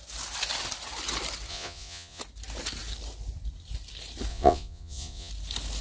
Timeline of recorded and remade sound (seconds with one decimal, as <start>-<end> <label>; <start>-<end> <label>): 0.0-1.5 recorded; 1.5-2.2 remade; 2.2-4.3 recorded; 4.3-5.3 remade; 5.3-5.8 recorded